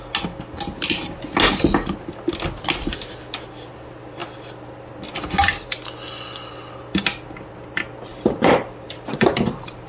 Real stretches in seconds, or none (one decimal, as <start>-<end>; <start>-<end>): 0.0-8.1